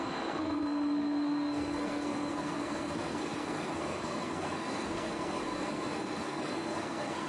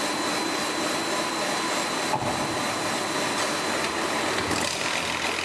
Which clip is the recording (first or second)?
second